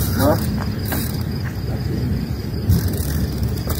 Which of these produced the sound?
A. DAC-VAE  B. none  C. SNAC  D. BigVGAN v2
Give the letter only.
D